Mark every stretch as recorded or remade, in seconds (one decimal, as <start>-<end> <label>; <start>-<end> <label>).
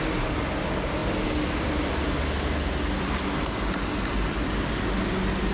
0.0-5.5 recorded